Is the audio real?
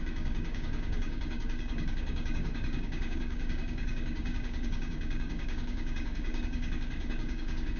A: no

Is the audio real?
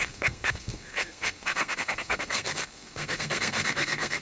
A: no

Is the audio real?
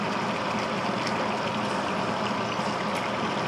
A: yes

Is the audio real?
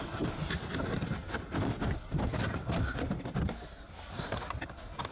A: yes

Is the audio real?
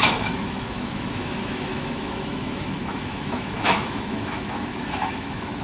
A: no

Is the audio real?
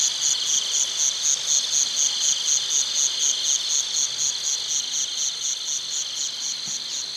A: yes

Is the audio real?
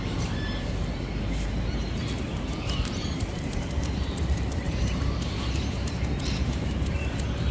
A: no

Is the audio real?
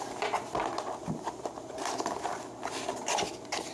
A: yes